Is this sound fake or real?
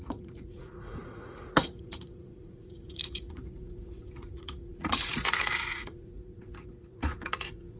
fake